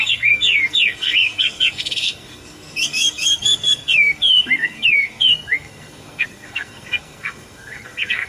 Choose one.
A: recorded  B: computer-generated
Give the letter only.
B